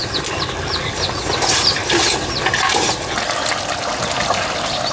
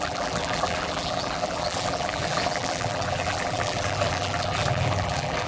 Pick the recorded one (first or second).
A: first